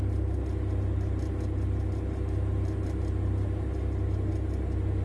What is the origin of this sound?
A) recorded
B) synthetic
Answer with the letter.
A